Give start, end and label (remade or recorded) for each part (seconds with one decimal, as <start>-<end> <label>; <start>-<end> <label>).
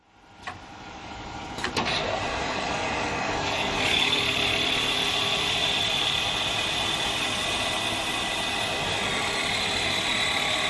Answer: 0.0-0.7 recorded; 0.7-1.6 remade; 1.6-2.3 recorded; 2.3-4.2 remade; 4.2-10.7 recorded